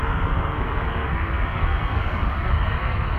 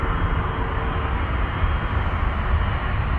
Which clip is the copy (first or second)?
first